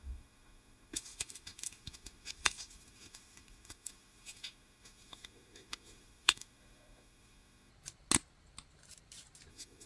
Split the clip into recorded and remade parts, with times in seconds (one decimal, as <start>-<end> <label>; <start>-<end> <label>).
0.0-7.7 remade; 7.7-9.5 recorded; 9.5-9.9 remade